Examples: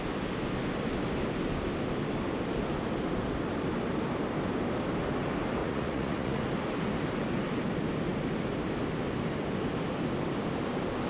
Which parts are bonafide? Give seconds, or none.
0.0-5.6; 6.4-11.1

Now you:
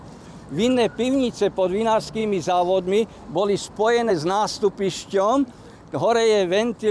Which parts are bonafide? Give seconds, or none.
0.0-6.9

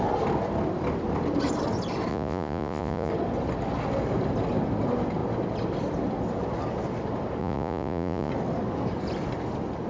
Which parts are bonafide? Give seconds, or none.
0.0-2.1; 3.1-7.4; 8.3-9.9

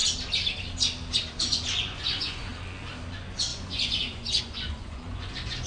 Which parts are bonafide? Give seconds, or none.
0.0-1.4; 2.5-3.1

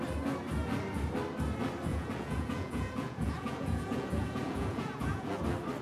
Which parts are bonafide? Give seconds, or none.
0.0-1.9; 5.3-5.8

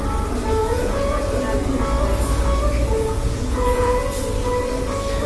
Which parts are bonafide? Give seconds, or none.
0.0-0.6; 1.2-2.9; 4.1-5.3

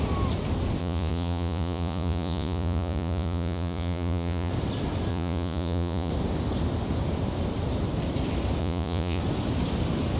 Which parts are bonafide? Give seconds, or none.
0.0-0.8; 4.5-5.1; 6.1-8.6; 9.2-10.2